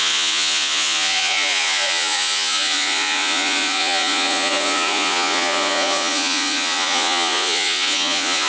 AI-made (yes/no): yes